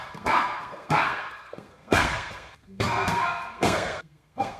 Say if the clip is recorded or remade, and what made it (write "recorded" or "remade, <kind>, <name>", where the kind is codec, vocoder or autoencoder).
remade, codec, SNAC